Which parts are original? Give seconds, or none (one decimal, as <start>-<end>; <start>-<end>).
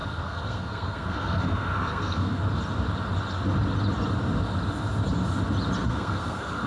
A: 2.4-5.9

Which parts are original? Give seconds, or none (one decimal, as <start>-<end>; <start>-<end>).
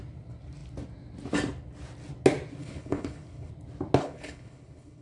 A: 0.0-2.6; 3.5-4.0